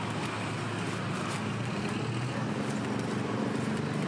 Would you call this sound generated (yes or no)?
no